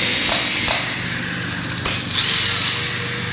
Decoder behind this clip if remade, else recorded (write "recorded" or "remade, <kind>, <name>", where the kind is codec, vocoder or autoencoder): recorded